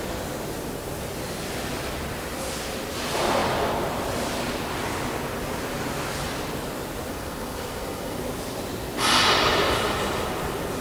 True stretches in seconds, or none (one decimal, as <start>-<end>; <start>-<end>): 0.0-7.1; 8.2-10.8

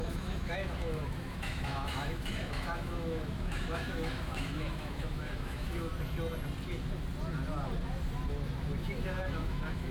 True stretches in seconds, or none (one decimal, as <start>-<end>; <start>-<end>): 5.9-8.8